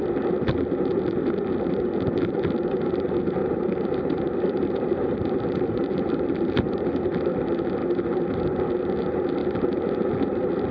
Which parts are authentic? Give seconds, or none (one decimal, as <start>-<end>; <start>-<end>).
0.0-3.4; 7.0-10.7

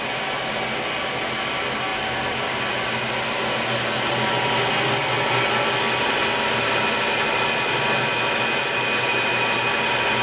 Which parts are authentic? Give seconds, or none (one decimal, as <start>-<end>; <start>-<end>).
0.0-1.9; 2.8-10.2

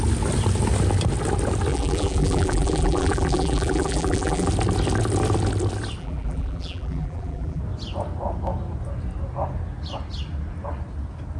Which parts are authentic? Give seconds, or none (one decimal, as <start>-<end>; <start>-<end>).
0.0-1.7; 4.5-6.0; 7.6-11.4

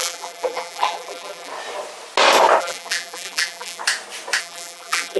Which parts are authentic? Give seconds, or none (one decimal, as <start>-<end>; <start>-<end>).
1.5-2.6; 3.8-4.4